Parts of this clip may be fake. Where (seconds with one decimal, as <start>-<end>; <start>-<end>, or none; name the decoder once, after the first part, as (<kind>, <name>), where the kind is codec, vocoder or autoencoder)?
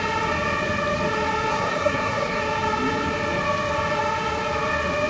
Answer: 1.5-2.4 (codec, SNAC)